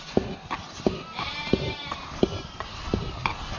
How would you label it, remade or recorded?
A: recorded